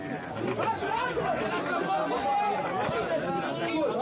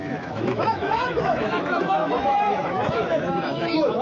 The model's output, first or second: second